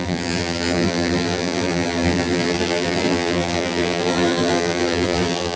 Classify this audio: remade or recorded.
remade